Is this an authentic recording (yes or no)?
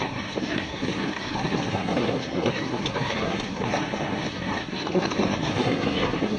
no